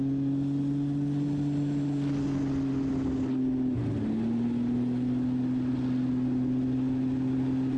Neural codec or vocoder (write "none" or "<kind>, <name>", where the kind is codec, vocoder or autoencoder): none